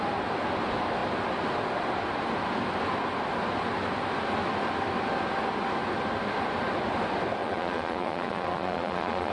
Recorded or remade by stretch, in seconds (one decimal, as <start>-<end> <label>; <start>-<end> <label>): 0.0-7.4 recorded; 7.4-9.3 remade